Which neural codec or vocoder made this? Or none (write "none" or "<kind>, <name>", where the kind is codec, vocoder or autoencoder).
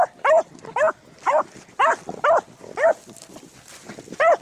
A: none